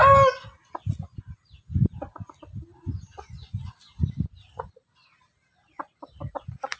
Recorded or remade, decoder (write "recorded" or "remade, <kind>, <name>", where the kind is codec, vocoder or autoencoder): recorded